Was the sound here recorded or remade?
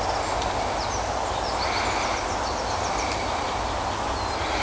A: recorded